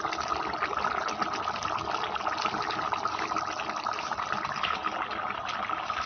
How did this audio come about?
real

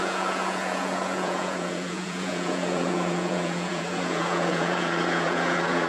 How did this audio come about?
fake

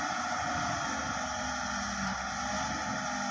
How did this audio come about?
real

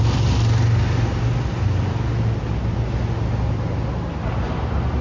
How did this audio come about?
real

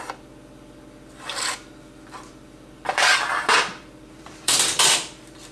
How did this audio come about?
fake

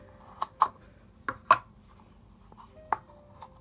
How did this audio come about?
real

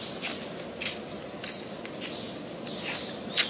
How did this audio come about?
real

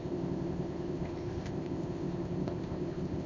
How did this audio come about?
fake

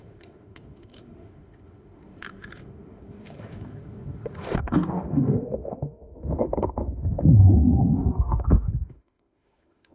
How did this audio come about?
fake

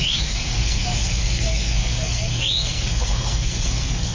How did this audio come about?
fake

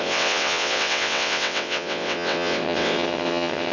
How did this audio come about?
fake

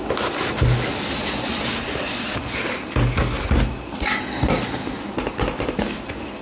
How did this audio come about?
real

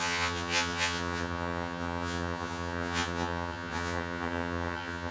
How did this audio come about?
fake